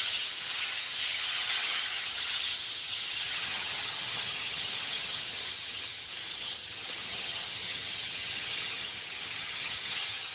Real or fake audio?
fake